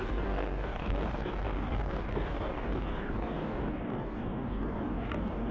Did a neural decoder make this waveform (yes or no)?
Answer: yes